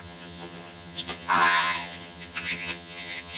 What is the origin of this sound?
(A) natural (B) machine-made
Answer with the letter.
B